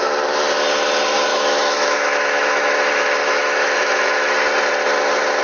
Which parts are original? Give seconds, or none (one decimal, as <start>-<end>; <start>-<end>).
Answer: 0.0-1.3; 4.3-5.4